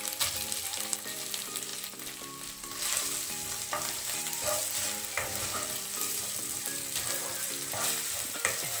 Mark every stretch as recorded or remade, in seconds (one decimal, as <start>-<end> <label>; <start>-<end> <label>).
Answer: 0.0-1.7 remade; 1.7-2.7 recorded; 2.7-8.8 remade